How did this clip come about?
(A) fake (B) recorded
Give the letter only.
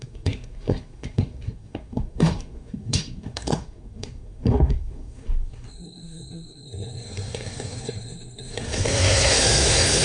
A